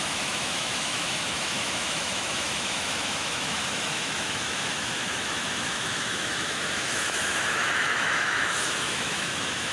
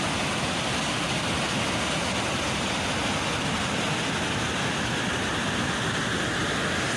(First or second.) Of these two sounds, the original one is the second